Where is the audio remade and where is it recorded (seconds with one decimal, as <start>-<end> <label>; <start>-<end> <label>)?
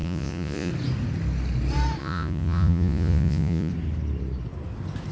0.0-0.7 remade; 0.7-2.0 recorded; 2.0-3.7 remade; 3.7-5.1 recorded